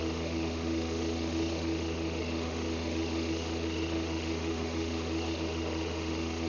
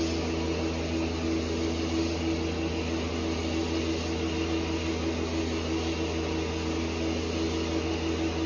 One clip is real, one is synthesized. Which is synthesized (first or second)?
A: first